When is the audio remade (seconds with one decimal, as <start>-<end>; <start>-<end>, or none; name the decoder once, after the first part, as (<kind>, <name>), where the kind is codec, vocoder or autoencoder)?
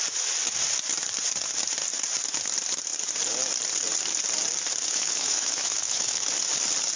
4.9-6.3 (autoencoder, DAC-VAE)